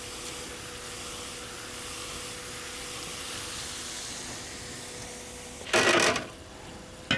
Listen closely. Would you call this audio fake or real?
real